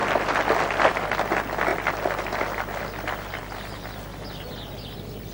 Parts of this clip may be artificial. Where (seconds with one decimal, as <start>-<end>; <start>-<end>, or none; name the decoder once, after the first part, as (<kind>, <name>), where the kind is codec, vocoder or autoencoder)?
none